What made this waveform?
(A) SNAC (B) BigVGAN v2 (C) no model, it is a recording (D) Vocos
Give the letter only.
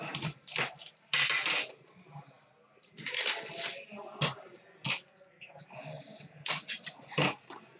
C